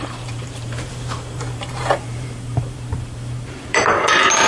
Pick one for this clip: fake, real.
fake